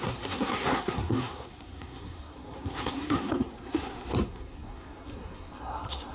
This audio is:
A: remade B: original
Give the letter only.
A